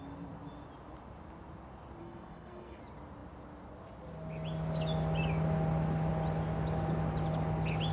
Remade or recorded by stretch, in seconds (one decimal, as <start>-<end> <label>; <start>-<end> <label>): 0.0-2.0 recorded; 2.0-2.8 remade; 2.8-7.9 recorded